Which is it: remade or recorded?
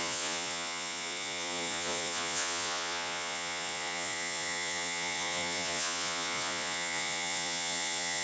remade